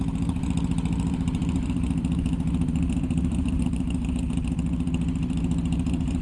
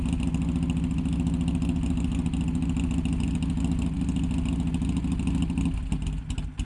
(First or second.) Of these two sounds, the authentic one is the second